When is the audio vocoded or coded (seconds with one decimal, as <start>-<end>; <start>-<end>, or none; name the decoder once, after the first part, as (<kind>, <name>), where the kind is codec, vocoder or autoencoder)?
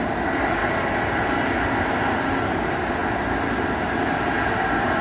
none